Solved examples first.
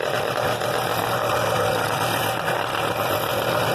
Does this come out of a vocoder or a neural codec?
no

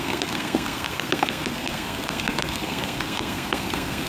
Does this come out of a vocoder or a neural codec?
yes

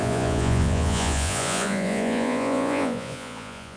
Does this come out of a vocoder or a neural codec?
yes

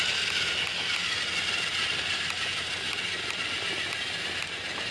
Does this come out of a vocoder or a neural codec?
no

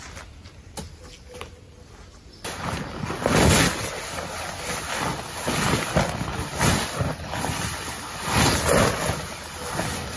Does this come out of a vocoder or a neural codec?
no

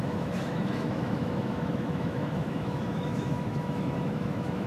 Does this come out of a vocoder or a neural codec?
yes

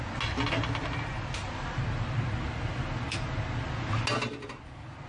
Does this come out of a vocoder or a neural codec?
no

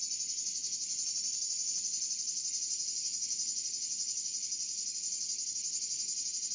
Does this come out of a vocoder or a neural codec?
no